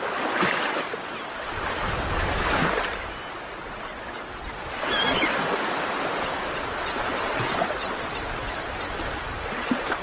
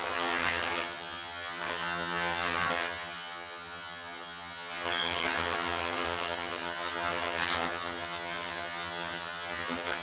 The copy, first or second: second